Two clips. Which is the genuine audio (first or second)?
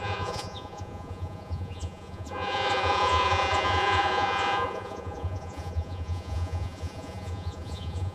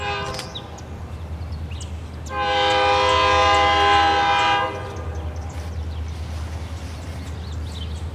second